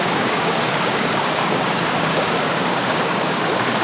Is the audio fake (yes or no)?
yes